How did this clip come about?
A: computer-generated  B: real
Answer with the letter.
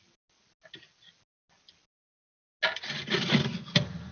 B